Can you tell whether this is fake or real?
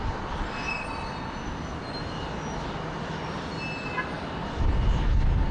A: real